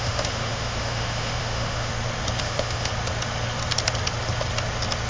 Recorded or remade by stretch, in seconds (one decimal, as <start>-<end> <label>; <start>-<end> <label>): 0.0-1.9 remade; 1.9-2.4 recorded; 2.4-2.9 remade; 2.9-5.1 recorded